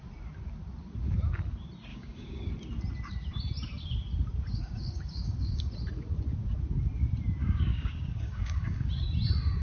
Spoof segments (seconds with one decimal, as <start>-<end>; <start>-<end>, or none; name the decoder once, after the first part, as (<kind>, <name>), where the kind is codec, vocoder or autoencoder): 1.9-2.5 (codec, DAC); 4.5-5.7; 7.4-8.9